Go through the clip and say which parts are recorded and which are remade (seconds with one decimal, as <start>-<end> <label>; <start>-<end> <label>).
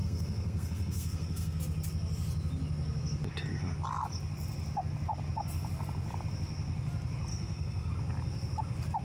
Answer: 0.0-1.6 remade; 1.6-7.3 recorded; 7.3-7.9 remade; 7.9-9.0 recorded